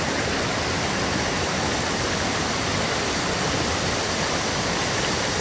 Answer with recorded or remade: recorded